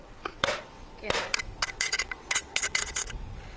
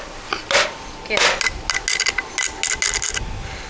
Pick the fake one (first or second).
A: first